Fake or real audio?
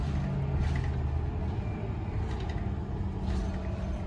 real